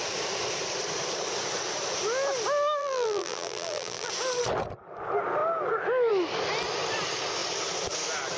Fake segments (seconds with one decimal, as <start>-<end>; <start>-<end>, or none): 2.8-4.1